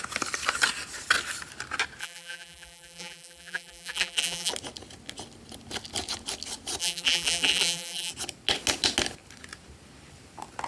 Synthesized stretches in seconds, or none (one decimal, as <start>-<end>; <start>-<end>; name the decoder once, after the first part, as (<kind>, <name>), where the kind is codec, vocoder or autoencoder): 2.0-4.5 (vocoder, BigVGAN v2); 6.8-8.1